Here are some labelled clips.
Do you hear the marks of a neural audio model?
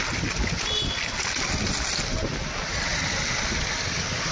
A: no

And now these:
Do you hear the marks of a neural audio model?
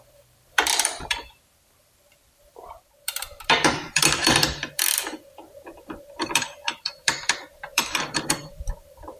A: yes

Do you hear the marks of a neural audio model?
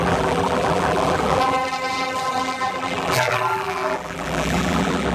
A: yes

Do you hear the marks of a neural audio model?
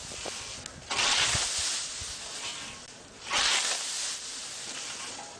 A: no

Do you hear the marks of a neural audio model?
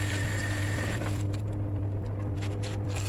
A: yes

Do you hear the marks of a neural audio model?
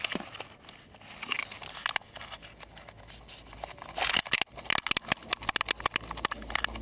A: no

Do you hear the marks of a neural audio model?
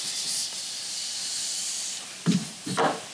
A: no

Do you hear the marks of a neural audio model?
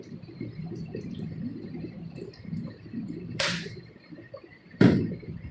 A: yes